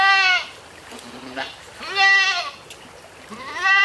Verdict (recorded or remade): recorded